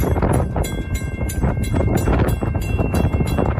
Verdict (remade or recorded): remade